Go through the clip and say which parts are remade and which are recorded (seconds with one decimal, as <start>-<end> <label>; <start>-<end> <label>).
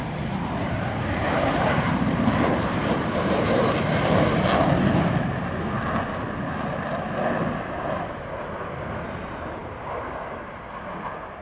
0.0-0.6 recorded; 0.6-4.1 remade; 4.1-11.4 recorded